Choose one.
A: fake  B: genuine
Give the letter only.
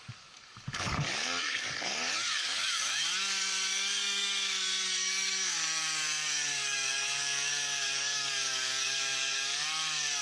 A